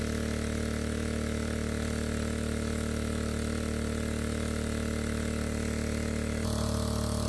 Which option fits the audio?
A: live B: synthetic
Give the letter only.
A